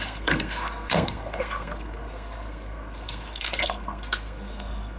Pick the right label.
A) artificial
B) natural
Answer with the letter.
A